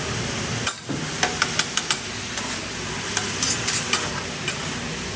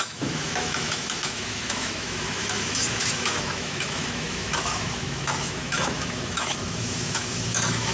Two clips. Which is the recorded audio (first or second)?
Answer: first